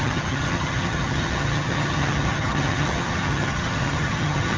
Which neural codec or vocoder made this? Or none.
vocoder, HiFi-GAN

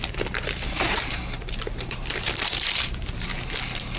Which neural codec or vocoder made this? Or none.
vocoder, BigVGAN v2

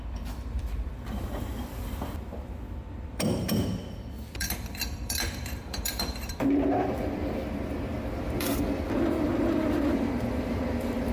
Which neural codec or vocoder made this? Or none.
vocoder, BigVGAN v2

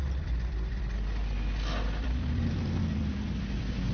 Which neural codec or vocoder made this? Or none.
vocoder, BigVGAN v2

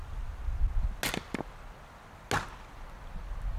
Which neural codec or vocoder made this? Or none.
none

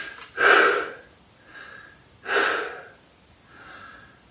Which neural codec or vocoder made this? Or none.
none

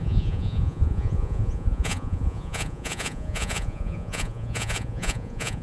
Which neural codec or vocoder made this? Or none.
vocoder, Vocos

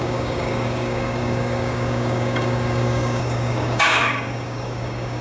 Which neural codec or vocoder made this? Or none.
codec, DAC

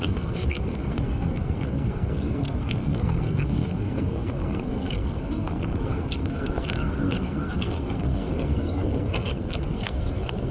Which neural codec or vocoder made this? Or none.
codec, SNAC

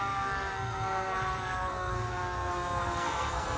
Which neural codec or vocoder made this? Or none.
codec, SNAC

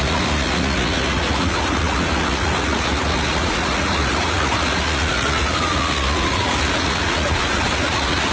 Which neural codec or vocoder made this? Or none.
vocoder, Vocos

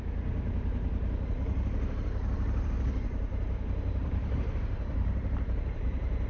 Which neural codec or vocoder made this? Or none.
vocoder, BigVGAN v2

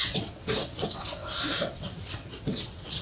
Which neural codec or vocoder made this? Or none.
vocoder, WaveNeXt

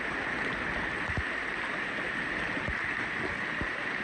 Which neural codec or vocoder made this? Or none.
none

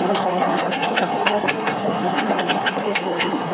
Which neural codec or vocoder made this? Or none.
codec, SNAC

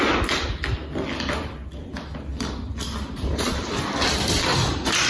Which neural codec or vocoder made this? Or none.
vocoder, BigVGAN v2